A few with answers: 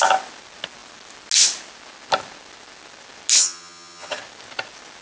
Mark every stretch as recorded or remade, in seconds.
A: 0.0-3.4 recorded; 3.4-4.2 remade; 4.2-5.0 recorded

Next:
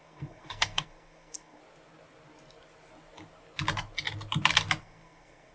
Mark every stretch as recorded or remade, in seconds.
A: 0.0-1.6 remade; 1.6-4.8 recorded; 4.8-5.5 remade

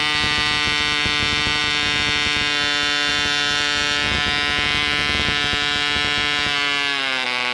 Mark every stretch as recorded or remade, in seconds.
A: 0.0-7.5 recorded